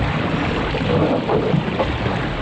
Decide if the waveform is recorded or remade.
recorded